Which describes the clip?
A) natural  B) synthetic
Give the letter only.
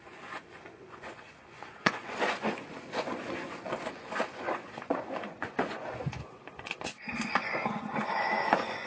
B